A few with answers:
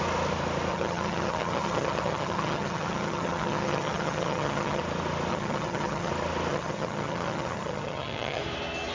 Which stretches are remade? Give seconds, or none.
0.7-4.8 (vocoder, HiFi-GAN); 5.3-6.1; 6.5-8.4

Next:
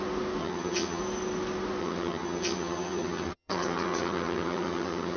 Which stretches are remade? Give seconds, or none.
0.4-1.0 (vocoder, HiFi-GAN); 1.8-5.2

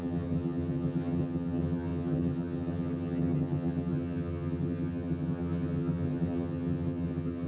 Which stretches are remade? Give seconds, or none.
0.0-7.5 (vocoder, HiFi-GAN)

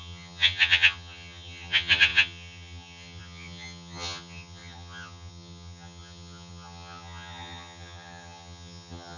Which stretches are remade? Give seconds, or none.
0.0-9.2 (vocoder, HiFi-GAN)

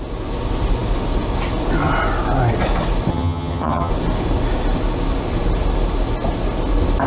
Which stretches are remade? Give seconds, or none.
3.1-3.9 (vocoder, HiFi-GAN)

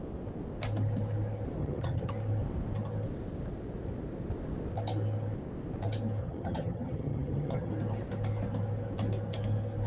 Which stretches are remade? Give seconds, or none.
1.6-2.1 (vocoder, HiFi-GAN); 6.2-7.7

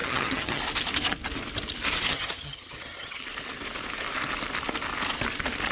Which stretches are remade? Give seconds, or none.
0.0-0.6 (vocoder, HiFi-GAN); 2.1-3.2

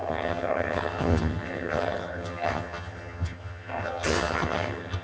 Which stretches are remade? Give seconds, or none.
0.0-5.0 (vocoder, HiFi-GAN)